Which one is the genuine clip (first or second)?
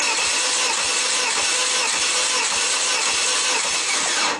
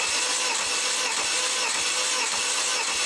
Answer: second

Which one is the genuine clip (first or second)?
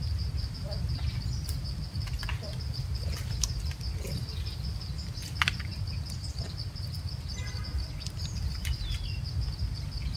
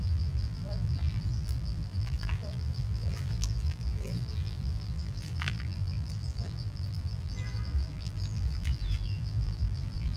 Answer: first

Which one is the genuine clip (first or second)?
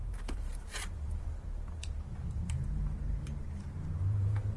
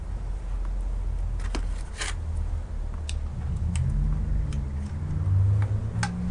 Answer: second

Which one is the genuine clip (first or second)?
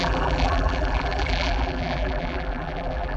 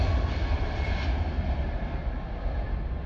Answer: second